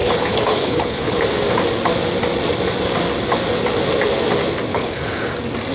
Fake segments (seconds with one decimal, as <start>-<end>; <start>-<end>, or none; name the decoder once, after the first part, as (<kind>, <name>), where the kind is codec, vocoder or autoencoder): 0.0-1.3 (codec, HILCodec); 4.7-5.3